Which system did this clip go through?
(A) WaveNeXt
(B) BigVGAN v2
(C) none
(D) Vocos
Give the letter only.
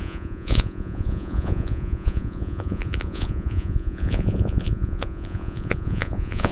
D